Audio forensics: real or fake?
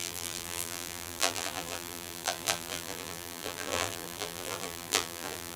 fake